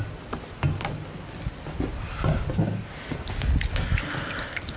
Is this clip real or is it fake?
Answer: real